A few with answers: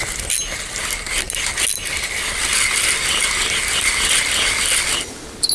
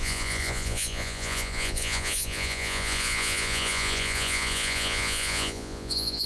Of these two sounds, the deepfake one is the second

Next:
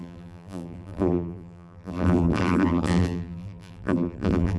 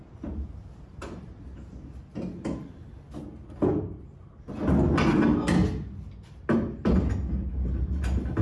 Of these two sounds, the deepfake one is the first